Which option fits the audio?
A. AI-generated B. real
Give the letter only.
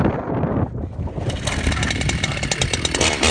B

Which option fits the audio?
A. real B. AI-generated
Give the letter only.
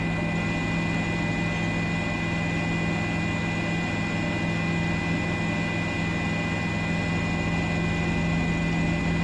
A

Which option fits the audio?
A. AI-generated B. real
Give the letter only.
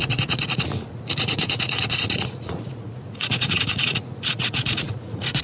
A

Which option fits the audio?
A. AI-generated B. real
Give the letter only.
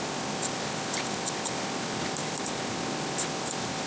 B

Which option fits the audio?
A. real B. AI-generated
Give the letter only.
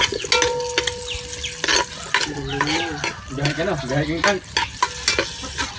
A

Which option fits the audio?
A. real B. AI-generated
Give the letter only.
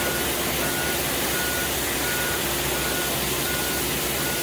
A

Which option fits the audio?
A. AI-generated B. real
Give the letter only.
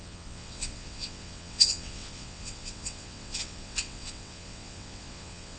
A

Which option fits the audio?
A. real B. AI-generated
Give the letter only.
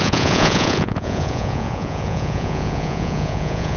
B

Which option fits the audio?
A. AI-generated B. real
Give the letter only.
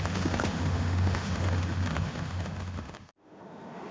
A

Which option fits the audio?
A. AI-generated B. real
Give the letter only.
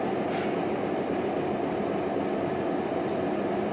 B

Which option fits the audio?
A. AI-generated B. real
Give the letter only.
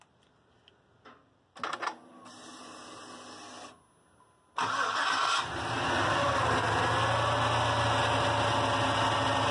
B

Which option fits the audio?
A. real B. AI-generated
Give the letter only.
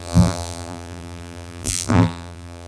B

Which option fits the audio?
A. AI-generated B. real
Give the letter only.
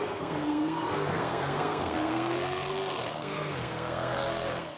A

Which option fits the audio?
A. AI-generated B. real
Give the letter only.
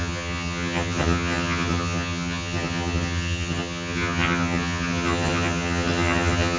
A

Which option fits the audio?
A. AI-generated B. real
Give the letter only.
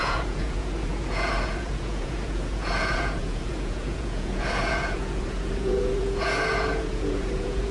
A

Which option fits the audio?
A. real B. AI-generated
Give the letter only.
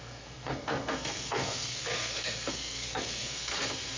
B